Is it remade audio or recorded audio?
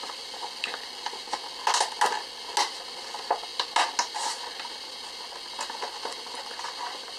recorded